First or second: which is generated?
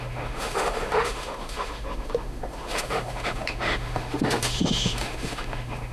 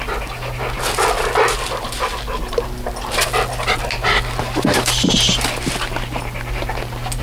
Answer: first